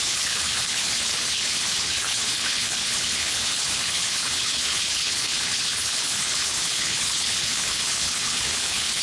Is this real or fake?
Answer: fake